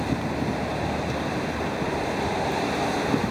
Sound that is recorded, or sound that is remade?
remade